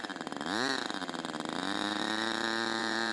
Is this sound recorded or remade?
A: remade